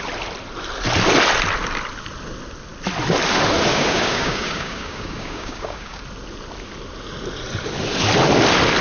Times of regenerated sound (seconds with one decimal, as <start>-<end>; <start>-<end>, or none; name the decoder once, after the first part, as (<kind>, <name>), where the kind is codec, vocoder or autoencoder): 3.7-6.0 (codec, DAC)